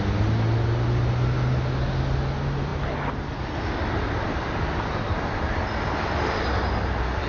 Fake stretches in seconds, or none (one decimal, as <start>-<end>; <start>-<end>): none